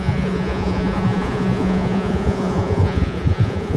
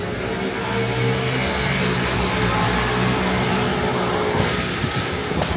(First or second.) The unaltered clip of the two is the second